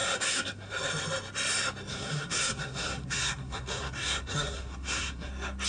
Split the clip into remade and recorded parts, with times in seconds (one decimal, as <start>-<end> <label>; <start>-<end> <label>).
0.0-0.7 remade; 0.7-1.9 recorded; 1.9-5.3 remade; 5.3-5.7 recorded